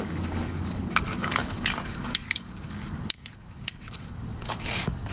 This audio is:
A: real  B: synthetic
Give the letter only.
B